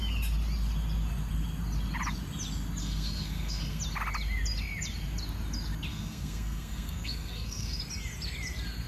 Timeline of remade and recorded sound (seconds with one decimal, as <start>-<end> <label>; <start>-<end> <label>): 0.0-2.8 recorded; 2.8-3.8 remade; 3.8-5.9 recorded; 5.9-7.8 remade; 7.8-8.9 recorded